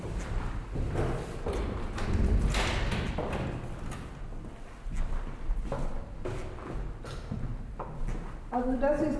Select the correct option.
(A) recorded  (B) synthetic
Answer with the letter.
A